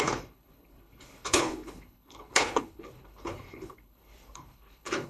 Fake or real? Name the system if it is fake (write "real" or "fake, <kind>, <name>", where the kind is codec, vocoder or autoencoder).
fake, codec, HILCodec